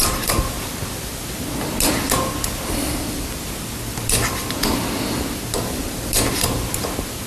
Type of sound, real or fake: real